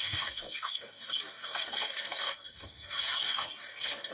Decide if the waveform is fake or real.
fake